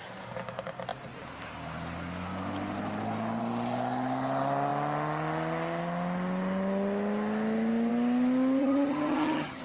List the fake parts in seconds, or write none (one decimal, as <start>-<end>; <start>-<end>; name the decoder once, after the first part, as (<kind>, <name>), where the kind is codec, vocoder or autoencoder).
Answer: 8.6-9.6 (vocoder, HiFi-GAN)